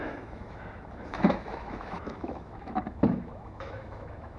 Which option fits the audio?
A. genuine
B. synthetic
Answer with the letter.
B